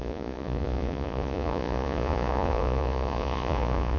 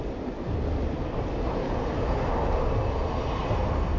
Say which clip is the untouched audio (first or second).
second